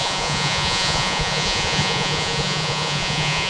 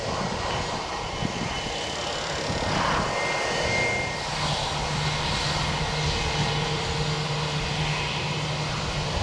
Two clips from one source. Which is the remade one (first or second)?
first